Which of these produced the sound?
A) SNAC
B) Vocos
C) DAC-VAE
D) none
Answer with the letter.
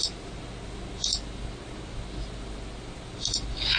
D